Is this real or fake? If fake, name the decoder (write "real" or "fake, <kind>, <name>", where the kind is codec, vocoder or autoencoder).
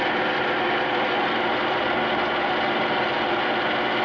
real